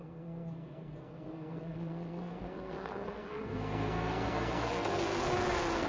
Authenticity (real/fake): fake